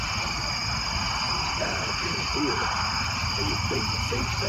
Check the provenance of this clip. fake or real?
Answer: real